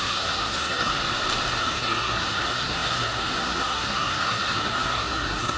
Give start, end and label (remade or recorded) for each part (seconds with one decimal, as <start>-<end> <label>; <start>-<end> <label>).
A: 0.0-0.9 remade; 0.9-1.6 recorded; 1.6-5.6 remade